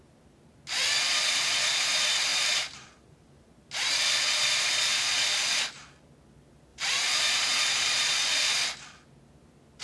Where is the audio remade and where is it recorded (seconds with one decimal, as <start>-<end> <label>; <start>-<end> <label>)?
0.0-2.3 recorded; 2.3-3.4 remade; 3.4-6.7 recorded; 6.7-7.6 remade; 7.6-9.8 recorded